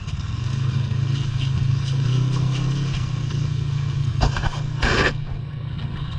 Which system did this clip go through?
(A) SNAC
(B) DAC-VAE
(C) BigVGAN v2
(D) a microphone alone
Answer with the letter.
A